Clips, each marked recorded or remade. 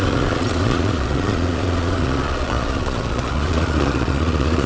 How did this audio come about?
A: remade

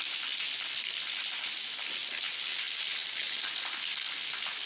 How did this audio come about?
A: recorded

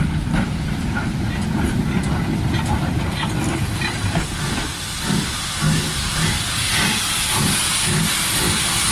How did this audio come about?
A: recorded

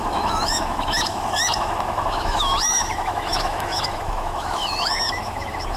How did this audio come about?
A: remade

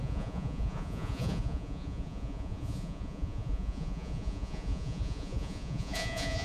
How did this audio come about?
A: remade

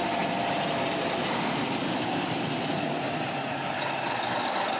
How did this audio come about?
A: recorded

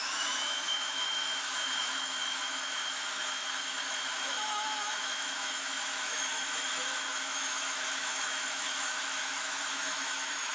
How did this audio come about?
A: remade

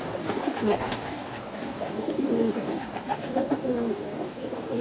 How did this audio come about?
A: remade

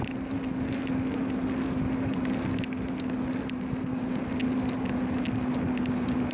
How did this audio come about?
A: recorded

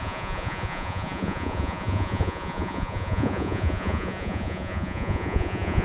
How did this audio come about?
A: remade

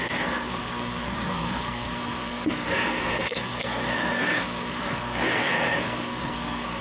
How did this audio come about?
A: remade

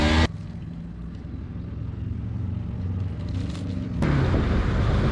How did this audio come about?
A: recorded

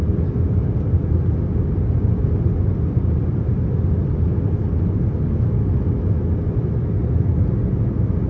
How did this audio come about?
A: recorded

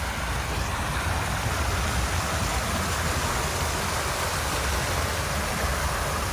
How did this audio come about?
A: recorded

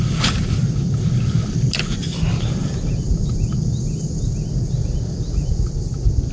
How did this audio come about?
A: recorded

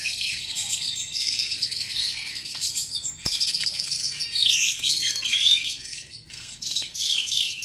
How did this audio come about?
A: remade